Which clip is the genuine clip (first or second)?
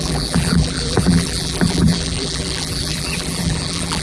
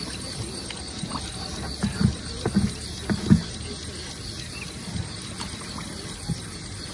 second